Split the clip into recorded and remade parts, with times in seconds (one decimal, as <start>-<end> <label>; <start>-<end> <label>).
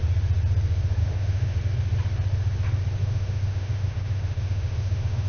0.0-1.0 recorded; 1.0-1.6 remade; 1.6-3.0 recorded; 3.0-5.3 remade